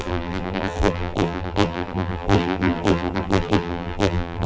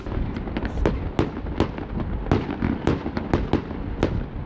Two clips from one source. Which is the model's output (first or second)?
first